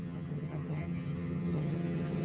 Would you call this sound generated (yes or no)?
yes